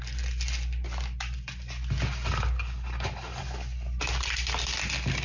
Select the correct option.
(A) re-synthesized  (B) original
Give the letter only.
B